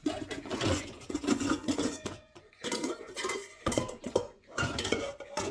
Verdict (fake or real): fake